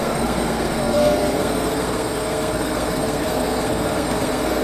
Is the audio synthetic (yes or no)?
yes